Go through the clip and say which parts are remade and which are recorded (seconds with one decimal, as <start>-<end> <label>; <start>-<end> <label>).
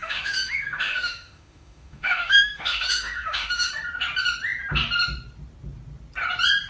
0.0-3.7 remade; 3.7-6.7 recorded